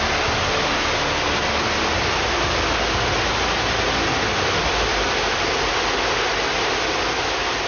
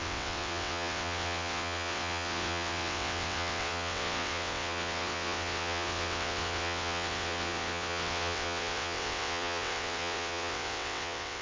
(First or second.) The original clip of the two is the first